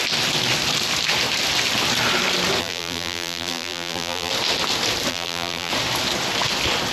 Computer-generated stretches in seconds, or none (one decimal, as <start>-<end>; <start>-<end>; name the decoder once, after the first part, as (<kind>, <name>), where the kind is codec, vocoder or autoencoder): 2.6-4.3 (vocoder, BigVGAN v2); 5.1-5.7